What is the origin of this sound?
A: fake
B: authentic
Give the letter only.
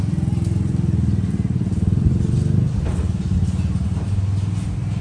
B